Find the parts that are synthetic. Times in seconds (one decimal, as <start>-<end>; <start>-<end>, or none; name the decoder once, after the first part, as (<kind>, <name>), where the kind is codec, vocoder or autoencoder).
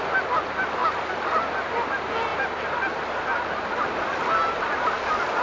none